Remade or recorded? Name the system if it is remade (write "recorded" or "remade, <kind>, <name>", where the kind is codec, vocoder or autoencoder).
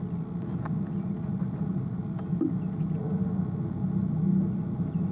recorded